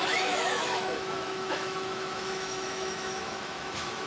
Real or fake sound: fake